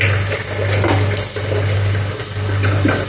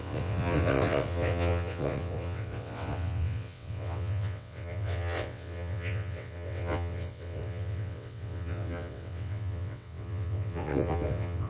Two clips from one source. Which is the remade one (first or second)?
second